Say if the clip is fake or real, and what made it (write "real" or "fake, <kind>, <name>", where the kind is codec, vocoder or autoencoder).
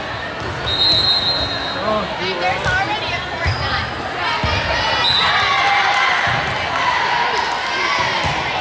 real